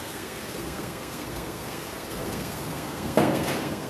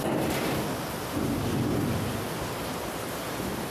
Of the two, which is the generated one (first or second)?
first